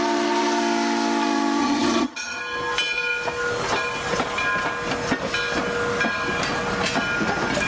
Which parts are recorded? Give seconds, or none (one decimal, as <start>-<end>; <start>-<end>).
0.0-1.6; 2.4-7.7